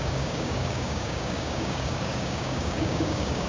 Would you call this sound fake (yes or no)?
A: yes